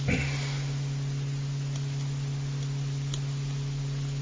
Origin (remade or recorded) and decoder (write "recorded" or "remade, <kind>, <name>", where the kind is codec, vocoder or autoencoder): recorded